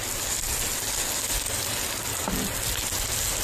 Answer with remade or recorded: recorded